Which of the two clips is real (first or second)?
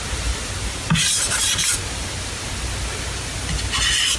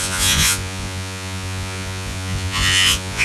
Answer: first